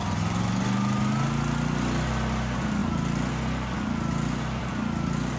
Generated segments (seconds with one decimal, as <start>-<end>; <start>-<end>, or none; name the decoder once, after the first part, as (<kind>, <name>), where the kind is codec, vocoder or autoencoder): none